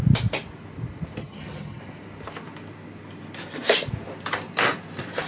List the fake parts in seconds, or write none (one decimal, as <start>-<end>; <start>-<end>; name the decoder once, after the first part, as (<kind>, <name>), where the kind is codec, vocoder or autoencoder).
1.2-1.8 (vocoder, HiFi-GAN)